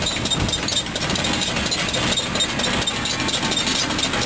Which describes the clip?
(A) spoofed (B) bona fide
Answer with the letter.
B